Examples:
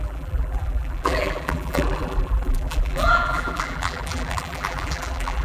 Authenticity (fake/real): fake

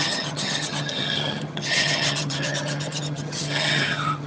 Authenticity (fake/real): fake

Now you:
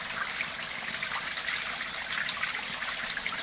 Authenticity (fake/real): real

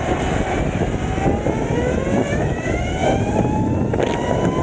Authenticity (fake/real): real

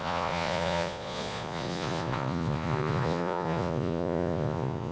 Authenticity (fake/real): fake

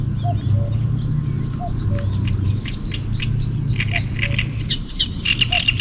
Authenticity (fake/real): real